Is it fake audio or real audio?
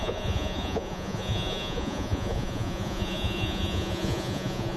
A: fake